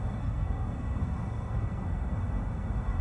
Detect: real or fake fake